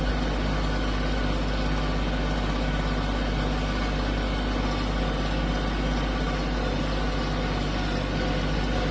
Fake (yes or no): no